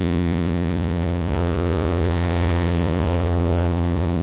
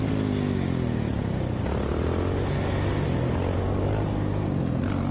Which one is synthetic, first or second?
first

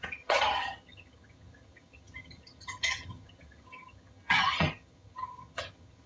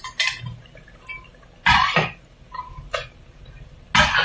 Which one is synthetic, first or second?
first